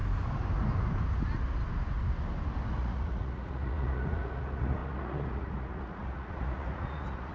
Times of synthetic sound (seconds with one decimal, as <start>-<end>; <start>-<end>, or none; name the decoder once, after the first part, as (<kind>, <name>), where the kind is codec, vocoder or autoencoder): 2.7-7.3 (vocoder, Vocos)